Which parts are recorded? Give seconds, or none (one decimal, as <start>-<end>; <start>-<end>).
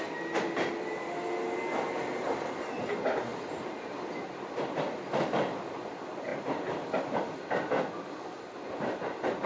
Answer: 0.0-9.5